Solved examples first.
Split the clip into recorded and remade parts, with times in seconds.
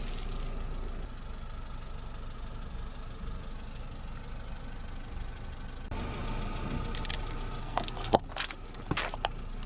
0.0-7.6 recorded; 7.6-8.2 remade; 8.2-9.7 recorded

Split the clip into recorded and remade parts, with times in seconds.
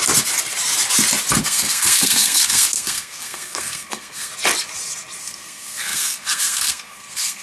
0.0-1.4 recorded; 1.4-4.3 remade; 4.3-5.2 recorded; 5.2-7.4 remade